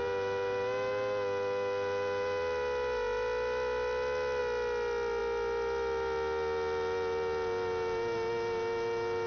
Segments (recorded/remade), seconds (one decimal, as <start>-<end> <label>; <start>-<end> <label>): 0.0-9.3 recorded